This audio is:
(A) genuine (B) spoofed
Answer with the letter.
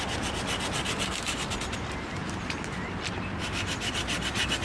A